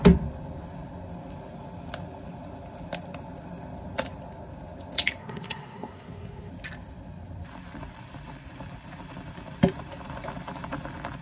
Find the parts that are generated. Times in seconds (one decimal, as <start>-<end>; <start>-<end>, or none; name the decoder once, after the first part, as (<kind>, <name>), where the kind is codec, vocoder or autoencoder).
5.2-6.5 (codec, SNAC)